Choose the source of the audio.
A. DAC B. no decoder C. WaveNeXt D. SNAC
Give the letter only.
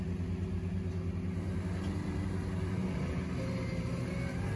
B